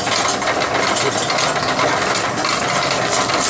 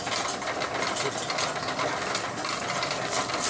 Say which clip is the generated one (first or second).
second